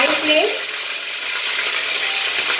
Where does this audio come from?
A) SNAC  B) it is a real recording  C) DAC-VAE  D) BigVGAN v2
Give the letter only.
B